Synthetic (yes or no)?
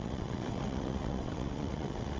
yes